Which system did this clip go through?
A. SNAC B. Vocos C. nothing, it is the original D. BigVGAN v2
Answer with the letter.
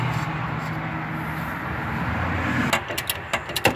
C